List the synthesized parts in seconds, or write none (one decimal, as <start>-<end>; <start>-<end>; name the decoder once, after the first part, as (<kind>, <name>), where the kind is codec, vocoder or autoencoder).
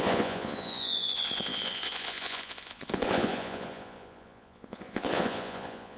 0.0-6.0 (vocoder, Vocos)